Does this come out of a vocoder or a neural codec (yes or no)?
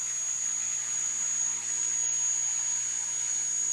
no